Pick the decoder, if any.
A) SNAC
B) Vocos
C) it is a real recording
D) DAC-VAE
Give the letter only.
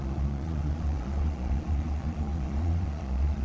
B